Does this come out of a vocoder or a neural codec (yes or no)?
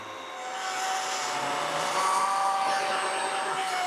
no